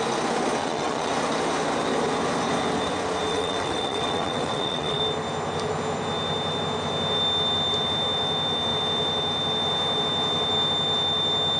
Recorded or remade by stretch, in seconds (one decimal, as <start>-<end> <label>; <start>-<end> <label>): 0.0-0.6 recorded; 0.6-1.1 remade; 1.1-3.3 recorded; 3.3-5.0 remade; 5.0-11.6 recorded